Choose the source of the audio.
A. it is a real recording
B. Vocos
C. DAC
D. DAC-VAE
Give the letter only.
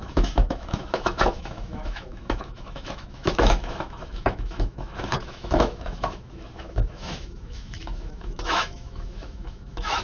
D